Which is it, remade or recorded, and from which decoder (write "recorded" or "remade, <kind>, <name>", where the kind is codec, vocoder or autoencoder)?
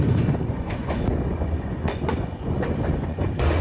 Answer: remade, vocoder, Vocos